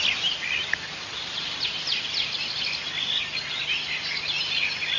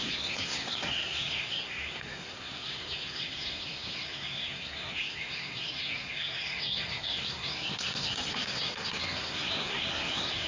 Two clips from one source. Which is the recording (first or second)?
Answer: first